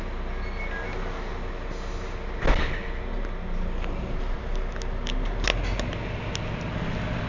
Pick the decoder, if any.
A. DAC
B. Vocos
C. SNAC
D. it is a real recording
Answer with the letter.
D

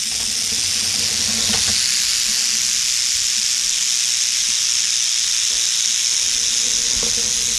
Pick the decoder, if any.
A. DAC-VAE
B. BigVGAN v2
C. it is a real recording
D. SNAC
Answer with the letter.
C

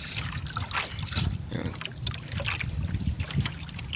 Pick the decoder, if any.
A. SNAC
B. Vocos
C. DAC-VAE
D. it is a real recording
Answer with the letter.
D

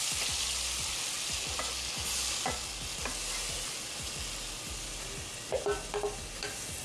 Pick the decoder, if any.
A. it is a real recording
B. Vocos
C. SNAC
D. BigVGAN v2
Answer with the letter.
A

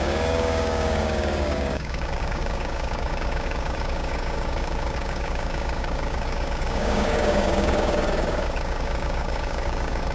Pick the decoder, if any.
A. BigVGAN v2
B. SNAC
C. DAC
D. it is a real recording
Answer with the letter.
C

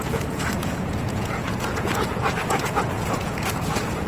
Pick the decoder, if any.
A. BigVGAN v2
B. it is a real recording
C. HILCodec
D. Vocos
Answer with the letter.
D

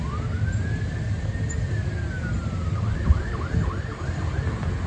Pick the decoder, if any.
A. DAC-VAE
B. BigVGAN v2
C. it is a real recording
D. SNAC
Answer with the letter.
C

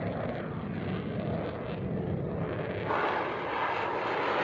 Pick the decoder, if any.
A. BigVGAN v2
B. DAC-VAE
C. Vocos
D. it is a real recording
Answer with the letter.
D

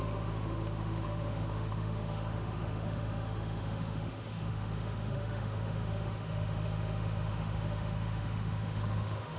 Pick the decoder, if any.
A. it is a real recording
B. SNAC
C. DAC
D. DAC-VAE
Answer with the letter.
D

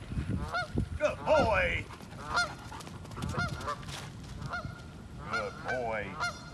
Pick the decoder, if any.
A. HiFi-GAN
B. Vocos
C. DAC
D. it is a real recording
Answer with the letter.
D